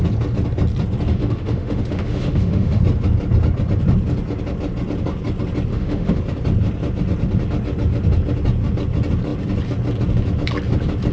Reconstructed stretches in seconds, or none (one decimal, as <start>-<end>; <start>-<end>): 1.1-2.8; 5.7-6.2